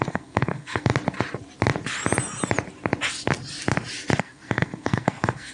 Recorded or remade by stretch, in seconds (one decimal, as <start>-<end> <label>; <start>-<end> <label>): 0.0-0.9 remade; 0.9-4.2 recorded; 4.2-5.5 remade